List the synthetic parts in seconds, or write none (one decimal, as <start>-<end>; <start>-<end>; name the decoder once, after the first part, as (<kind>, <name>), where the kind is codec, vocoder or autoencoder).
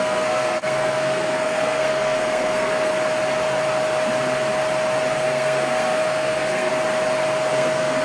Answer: 0.0-2.9 (codec, SNAC); 5.1-6.7; 7.5-8.0